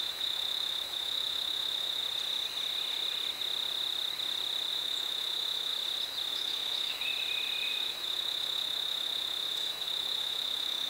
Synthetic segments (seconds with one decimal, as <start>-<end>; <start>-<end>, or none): 0.0-2.0; 4.7-5.7; 6.3-7.1; 7.7-10.9